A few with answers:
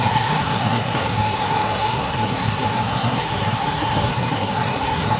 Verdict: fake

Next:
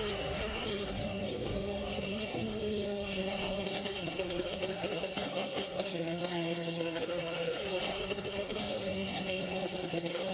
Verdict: fake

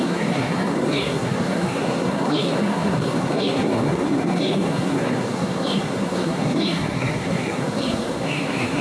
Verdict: fake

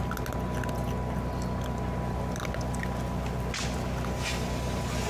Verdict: real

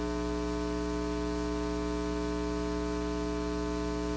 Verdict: real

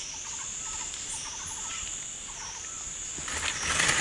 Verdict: real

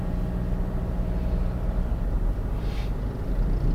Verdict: real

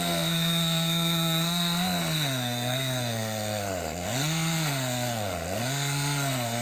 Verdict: fake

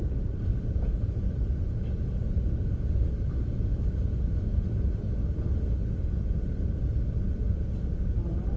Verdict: real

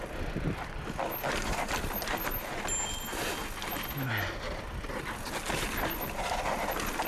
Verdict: real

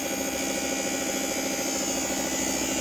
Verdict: real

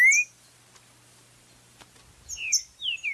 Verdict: real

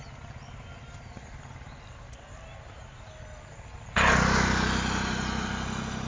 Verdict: real